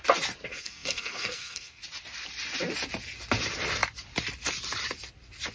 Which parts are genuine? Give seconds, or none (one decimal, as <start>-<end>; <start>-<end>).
0.0-0.5; 1.8-5.5